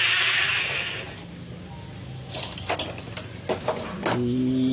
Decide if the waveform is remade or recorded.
recorded